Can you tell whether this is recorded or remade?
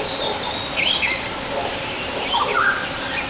recorded